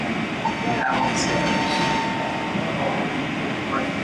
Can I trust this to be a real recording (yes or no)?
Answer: yes